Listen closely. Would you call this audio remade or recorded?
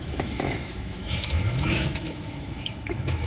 remade